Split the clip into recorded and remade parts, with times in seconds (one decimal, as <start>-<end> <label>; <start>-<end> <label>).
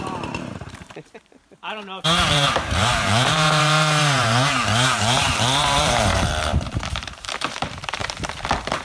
0.0-8.0 remade; 8.0-8.8 recorded